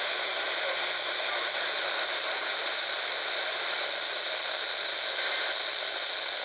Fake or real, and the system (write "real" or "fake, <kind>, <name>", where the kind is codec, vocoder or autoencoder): real